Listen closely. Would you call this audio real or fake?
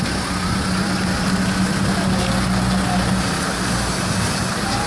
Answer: real